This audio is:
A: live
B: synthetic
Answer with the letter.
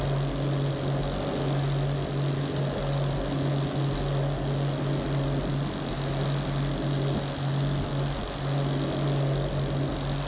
A